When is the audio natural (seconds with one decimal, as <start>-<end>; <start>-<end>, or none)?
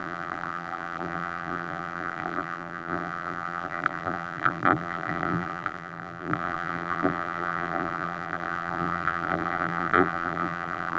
none